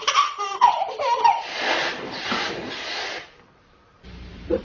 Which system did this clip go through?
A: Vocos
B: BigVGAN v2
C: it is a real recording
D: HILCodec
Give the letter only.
B